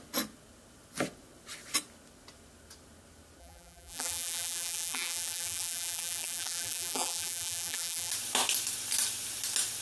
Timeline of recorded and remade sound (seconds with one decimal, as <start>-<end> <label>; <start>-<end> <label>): 0.0-3.4 recorded; 3.4-8.1 remade; 8.1-9.8 recorded